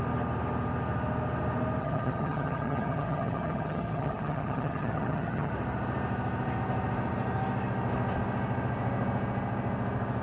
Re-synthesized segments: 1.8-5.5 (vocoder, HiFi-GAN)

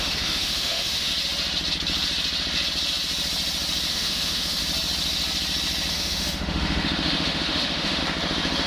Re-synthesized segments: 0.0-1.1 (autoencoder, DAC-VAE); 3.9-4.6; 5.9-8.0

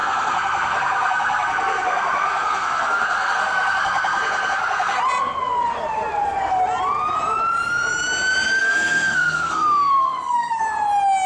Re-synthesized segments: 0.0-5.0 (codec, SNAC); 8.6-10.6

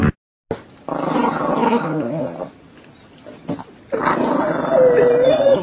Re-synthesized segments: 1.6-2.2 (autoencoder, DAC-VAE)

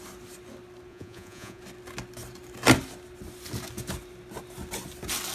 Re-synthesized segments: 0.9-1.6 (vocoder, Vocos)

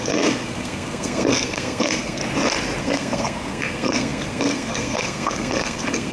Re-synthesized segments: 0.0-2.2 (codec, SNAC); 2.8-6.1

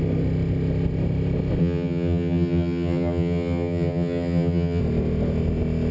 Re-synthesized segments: 1.6-4.8 (vocoder, HiFi-GAN)

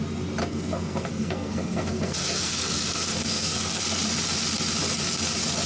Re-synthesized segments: 0.4-3.8 (codec, SNAC)